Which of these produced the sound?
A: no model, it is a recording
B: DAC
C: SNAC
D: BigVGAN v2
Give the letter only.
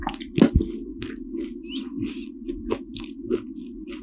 A